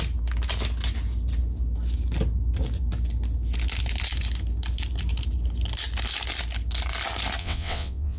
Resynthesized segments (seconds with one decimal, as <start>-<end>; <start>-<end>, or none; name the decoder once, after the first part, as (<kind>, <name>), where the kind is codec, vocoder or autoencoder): 7.4-8.2 (vocoder, WaveNeXt)